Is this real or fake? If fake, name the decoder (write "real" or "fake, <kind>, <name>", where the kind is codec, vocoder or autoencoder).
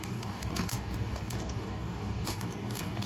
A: fake, codec, DAC